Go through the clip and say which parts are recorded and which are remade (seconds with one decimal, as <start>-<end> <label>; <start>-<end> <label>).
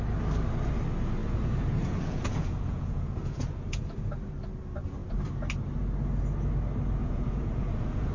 0.0-1.2 recorded; 1.2-4.1 remade; 4.1-7.0 recorded; 7.0-8.1 remade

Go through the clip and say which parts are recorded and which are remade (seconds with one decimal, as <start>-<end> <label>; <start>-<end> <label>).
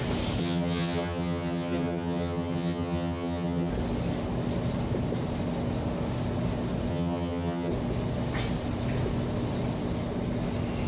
0.0-0.4 recorded; 0.4-3.7 remade; 3.7-6.9 recorded; 6.9-7.7 remade; 7.7-10.9 recorded